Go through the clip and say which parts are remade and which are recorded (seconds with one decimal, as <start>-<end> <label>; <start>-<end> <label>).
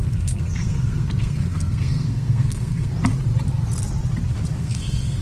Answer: 0.0-2.9 remade; 2.9-4.6 recorded; 4.6-5.2 remade